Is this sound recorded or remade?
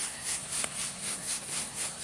remade